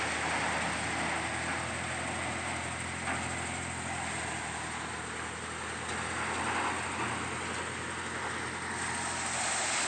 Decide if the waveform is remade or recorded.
recorded